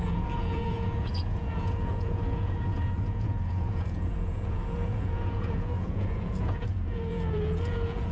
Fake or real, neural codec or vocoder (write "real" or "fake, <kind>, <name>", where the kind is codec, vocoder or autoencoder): fake, vocoder, Vocos